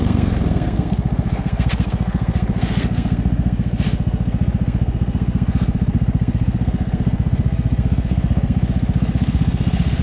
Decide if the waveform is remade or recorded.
remade